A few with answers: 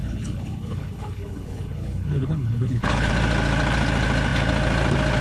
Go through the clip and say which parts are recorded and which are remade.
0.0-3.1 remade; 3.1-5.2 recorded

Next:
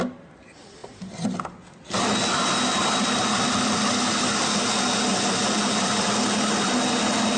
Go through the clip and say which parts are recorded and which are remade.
0.0-7.4 recorded

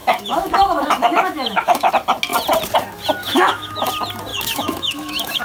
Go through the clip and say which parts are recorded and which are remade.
0.0-1.9 remade; 1.9-3.2 recorded; 3.2-3.9 remade; 3.9-4.3 recorded; 4.3-5.4 remade

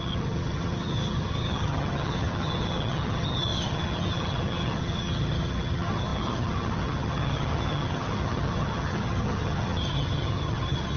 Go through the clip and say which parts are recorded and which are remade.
0.0-11.0 remade